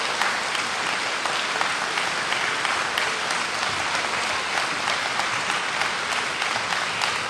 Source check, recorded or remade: recorded